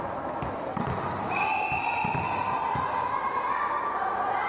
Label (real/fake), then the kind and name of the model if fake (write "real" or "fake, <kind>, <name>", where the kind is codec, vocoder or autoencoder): real